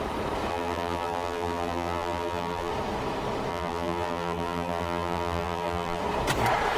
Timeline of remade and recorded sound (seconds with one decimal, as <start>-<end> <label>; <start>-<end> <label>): 0.0-0.5 recorded; 0.5-2.7 remade; 2.7-3.5 recorded; 3.5-6.0 remade; 6.0-6.8 recorded